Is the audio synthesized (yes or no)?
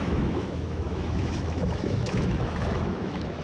yes